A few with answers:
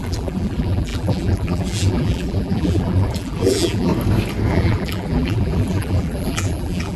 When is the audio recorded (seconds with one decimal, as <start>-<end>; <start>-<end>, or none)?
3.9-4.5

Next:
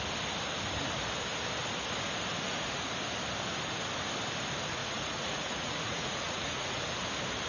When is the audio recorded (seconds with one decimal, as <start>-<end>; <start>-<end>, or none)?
0.0-4.8; 6.8-7.5

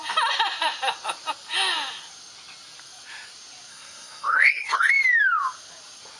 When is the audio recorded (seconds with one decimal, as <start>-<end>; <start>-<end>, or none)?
0.0-3.7; 4.9-6.2

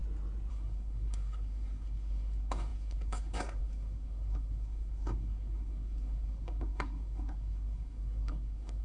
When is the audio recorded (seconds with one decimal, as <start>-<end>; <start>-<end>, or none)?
0.0-0.5

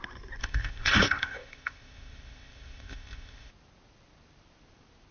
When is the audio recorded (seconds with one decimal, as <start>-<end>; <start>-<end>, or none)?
0.0-0.4; 3.5-5.1